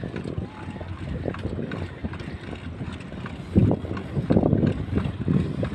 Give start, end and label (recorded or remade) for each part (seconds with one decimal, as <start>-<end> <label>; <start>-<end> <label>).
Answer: 0.0-5.7 recorded